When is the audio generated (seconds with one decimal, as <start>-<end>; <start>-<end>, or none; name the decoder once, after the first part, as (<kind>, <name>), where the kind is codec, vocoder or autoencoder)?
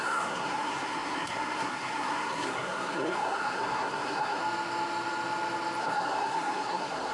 0.0-4.4 (codec, SNAC); 5.8-7.1